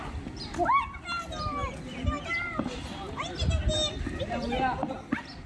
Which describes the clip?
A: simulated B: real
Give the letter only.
B